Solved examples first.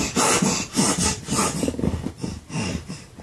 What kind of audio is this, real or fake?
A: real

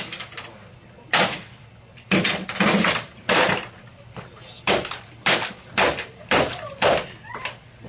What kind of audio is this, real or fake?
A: real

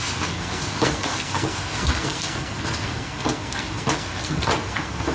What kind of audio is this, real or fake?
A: fake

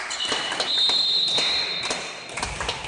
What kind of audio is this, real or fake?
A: real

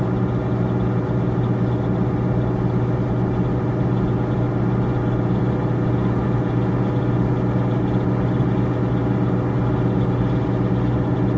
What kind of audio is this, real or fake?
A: real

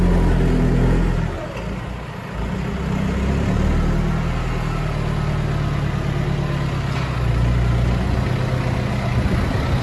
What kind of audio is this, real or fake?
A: real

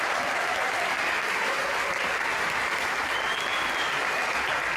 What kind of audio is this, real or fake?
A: fake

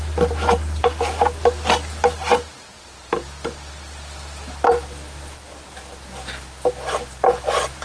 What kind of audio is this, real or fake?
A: real